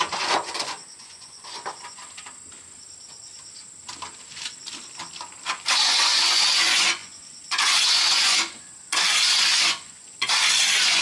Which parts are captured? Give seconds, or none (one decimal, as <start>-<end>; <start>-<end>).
2.0-5.7